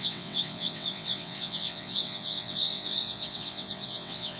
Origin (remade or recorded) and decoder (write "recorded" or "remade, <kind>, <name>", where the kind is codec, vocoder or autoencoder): remade, vocoder, WaveNeXt